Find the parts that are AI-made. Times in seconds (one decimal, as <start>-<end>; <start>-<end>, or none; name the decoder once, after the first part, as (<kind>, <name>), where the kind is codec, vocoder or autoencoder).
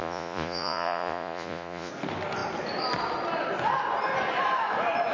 0.0-1.9 (vocoder, Vocos)